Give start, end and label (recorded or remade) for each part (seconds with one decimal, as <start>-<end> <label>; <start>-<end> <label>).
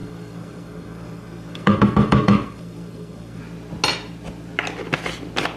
0.0-3.4 remade; 3.4-5.6 recorded